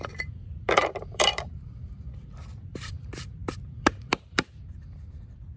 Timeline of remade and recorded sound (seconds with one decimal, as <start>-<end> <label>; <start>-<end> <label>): 0.0-5.6 remade